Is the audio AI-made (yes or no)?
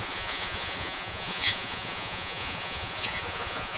yes